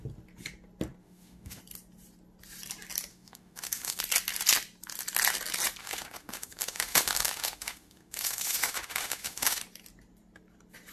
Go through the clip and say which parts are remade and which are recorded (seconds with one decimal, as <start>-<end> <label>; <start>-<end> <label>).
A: 0.0-1.0 recorded; 1.0-1.6 remade; 1.6-3.1 recorded; 3.1-4.0 remade; 4.0-5.8 recorded; 5.8-9.6 remade; 9.6-10.9 recorded